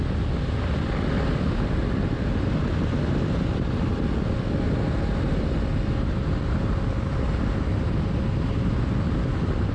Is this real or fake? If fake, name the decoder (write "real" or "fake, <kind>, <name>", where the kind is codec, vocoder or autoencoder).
real